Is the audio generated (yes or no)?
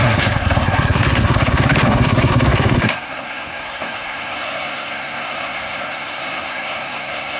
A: yes